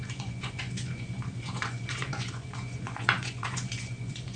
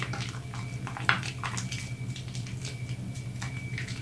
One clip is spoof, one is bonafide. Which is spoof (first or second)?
first